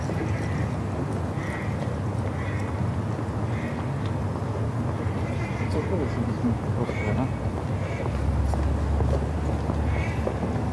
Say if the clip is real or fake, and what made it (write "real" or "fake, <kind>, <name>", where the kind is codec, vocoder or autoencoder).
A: real